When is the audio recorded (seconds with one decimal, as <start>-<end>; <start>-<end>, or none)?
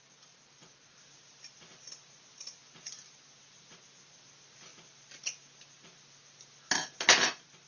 0.0-7.7